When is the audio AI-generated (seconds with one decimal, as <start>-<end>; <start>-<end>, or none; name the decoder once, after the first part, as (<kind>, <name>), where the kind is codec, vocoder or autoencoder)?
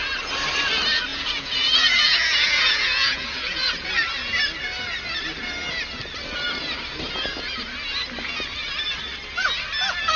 1.1-3.9 (vocoder, Vocos)